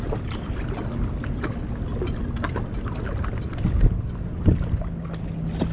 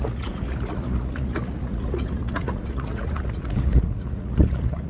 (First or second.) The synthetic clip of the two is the second